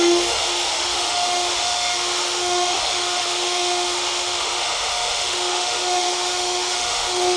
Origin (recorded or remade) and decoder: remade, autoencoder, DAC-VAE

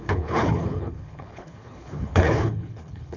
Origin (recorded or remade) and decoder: remade, codec, HILCodec